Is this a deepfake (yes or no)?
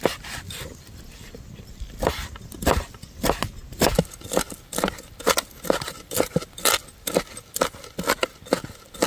no